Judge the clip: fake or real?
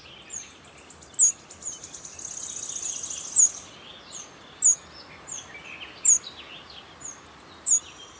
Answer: real